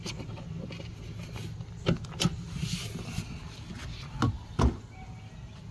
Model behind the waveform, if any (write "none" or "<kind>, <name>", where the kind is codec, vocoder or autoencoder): none